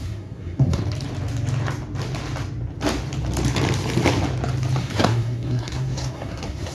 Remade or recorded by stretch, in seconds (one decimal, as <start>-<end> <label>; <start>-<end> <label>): 0.0-0.8 remade; 0.8-4.8 recorded; 4.8-6.7 remade